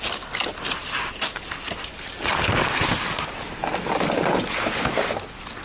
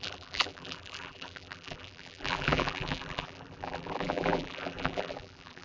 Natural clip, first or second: first